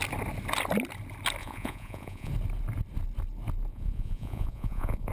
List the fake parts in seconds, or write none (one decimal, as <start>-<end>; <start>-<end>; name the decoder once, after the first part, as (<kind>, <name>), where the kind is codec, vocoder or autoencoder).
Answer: 1.4-2.3 (vocoder, Vocos); 3.7-5.1